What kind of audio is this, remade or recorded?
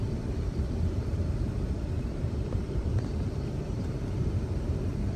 remade